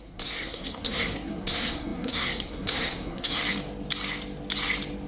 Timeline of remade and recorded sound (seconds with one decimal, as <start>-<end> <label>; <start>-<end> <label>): 0.0-3.4 remade; 3.4-5.1 recorded